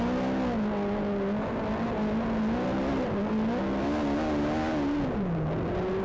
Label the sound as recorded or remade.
recorded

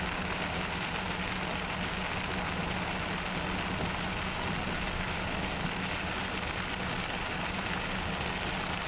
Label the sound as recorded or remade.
recorded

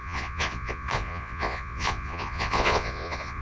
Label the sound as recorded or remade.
remade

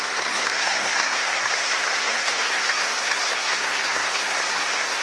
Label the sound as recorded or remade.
remade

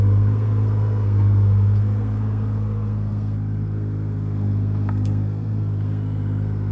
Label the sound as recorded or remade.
remade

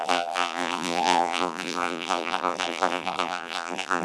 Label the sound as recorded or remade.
remade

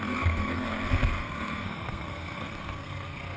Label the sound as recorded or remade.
remade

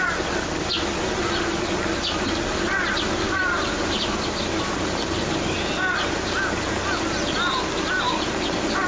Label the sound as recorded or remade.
recorded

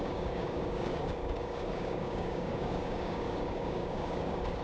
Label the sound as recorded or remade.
remade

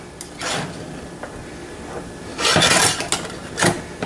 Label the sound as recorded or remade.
recorded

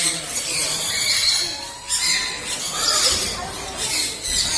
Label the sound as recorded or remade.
recorded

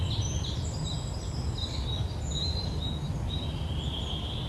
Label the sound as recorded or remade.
recorded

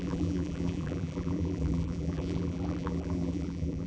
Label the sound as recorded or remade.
remade